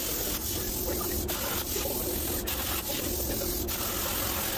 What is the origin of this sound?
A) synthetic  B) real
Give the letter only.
B